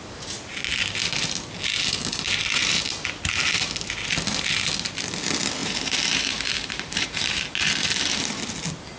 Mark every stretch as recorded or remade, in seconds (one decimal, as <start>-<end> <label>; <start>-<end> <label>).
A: 0.0-5.6 recorded; 5.6-7.4 remade; 7.4-7.9 recorded; 7.9-8.5 remade; 8.5-9.0 recorded

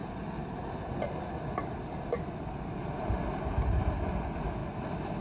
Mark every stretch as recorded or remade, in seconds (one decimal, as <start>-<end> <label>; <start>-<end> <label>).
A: 0.0-5.2 recorded

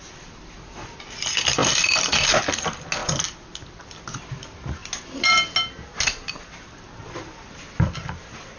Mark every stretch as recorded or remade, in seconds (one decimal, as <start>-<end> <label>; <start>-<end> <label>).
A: 0.0-8.6 recorded